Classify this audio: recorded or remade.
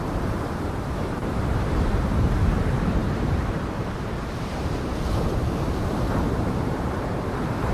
remade